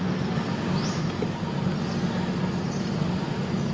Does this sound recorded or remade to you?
recorded